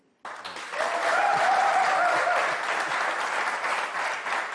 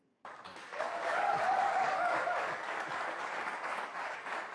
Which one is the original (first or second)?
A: first